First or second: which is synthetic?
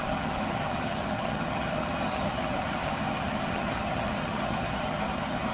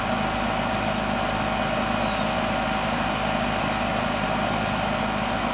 first